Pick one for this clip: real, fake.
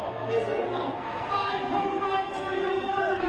fake